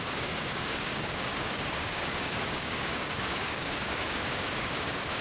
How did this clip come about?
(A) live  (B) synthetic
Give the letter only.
B